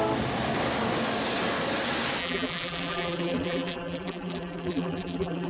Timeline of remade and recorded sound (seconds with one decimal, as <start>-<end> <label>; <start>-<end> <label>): 0.0-2.2 recorded; 2.2-5.5 remade